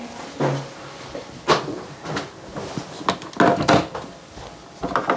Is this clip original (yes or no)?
yes